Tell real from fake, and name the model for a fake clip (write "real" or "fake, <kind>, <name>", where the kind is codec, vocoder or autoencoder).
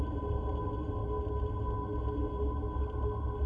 real